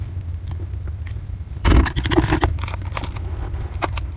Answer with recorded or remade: remade